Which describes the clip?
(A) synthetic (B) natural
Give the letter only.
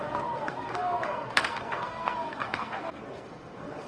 A